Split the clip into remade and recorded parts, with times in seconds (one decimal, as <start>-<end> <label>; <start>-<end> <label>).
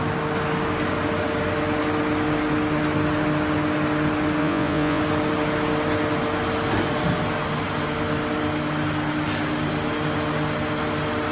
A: 0.0-4.4 recorded; 4.4-5.0 remade; 5.0-11.3 recorded